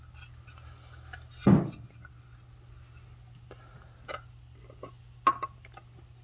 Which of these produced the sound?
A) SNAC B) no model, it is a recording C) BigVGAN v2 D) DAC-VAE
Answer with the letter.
B